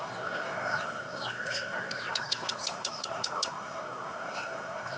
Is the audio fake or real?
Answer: fake